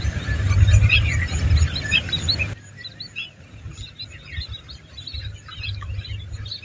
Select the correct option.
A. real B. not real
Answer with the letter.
A